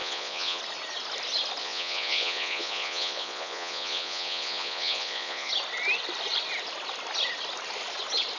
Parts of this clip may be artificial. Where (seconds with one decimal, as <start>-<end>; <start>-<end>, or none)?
0.0-0.6; 1.6-5.5